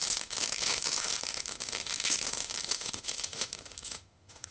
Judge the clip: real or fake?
fake